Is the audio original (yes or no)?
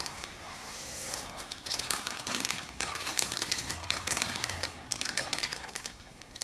no